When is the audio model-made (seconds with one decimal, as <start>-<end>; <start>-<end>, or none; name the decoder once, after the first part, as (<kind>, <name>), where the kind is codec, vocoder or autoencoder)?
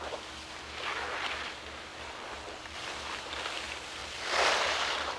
1.9-2.9 (vocoder, BigVGAN v2); 4.0-5.2